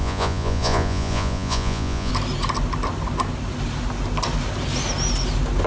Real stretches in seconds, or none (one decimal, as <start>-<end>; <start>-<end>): 2.1-5.7